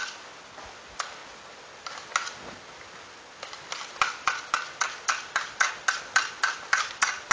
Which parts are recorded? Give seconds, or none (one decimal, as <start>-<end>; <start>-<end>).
0.0-7.3